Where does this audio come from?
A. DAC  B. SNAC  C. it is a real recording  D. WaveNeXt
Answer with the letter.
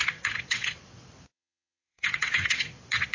D